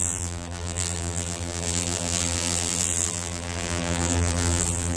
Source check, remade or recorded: remade